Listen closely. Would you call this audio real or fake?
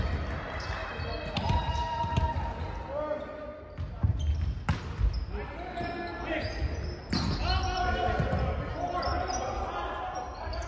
real